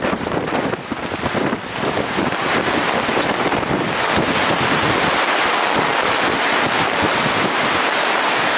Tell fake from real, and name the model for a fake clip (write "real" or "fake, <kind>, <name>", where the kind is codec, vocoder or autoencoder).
real